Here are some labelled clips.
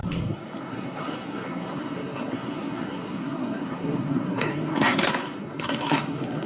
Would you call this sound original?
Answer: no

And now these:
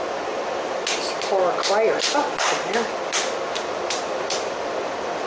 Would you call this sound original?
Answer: yes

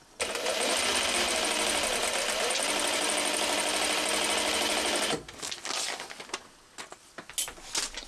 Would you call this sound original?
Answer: yes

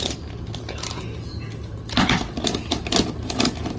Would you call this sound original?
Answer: yes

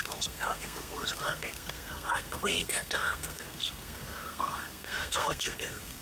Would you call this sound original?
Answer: no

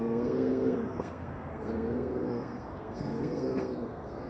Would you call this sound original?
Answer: no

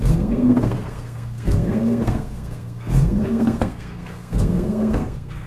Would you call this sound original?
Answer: no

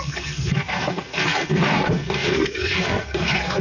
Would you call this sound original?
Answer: no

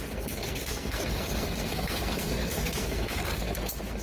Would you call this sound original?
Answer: no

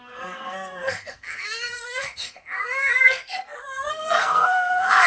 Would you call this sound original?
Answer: no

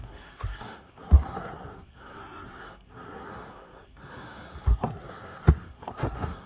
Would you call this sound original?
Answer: no